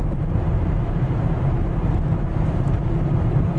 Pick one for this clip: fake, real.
fake